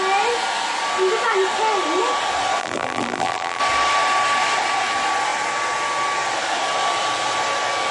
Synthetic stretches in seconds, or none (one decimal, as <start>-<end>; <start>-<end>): 2.6-3.6